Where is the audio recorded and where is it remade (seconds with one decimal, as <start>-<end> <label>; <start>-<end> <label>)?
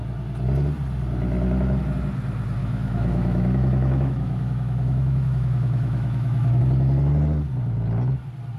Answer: 0.0-2.6 recorded; 2.6-6.6 remade; 6.6-8.6 recorded